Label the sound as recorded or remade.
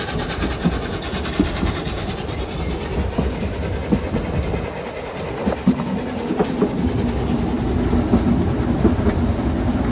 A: recorded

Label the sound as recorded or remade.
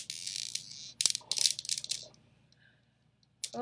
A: recorded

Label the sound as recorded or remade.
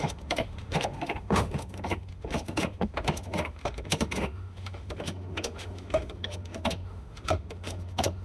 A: remade